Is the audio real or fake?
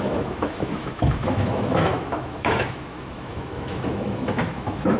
fake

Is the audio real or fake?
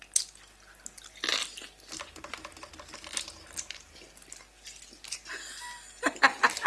real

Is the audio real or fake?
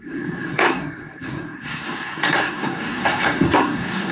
fake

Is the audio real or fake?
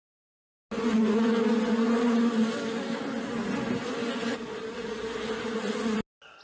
real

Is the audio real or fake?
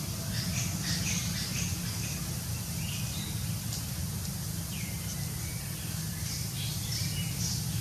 real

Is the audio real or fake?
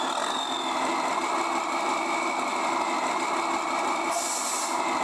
real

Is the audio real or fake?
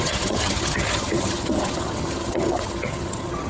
fake